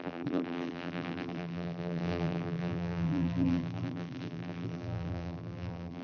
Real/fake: fake